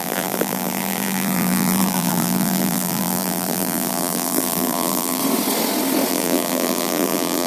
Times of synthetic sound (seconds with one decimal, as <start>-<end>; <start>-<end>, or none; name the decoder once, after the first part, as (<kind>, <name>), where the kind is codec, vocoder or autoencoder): 0.0-5.2 (vocoder, BigVGAN v2); 6.1-7.5